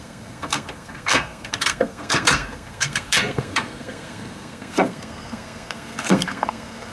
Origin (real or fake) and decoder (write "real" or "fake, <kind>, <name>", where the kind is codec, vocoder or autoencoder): fake, codec, SNAC